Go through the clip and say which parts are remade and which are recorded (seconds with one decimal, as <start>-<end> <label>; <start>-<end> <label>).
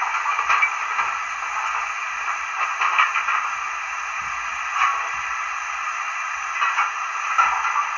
0.0-2.0 recorded; 2.0-3.1 remade; 3.1-4.5 recorded; 4.5-6.3 remade; 6.3-8.0 recorded